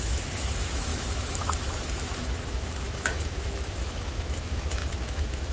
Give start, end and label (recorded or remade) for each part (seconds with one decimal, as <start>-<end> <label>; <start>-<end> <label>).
0.0-5.5 remade